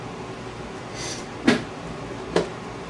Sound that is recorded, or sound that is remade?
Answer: recorded